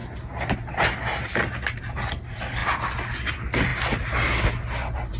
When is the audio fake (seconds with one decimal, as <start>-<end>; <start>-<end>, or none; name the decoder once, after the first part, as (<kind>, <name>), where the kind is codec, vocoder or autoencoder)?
none